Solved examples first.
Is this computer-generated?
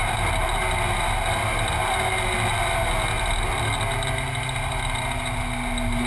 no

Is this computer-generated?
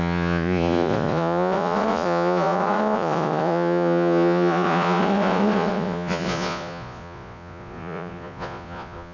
yes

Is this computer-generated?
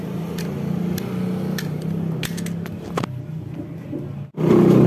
no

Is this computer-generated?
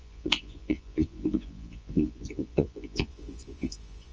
yes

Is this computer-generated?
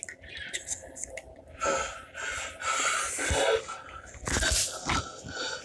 no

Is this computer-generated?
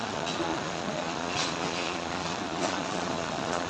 yes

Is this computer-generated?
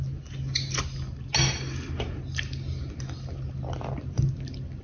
no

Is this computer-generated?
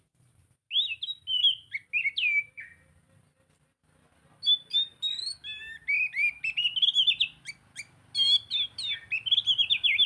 no